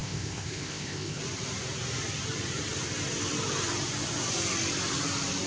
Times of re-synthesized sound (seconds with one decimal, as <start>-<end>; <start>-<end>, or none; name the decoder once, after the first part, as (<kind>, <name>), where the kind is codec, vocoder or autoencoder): 0.0-1.2 (codec, ZipCodec)